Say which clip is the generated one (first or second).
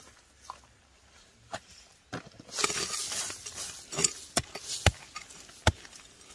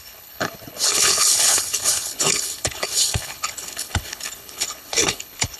second